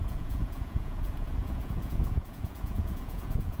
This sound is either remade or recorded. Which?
remade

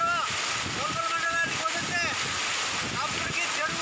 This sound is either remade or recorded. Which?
recorded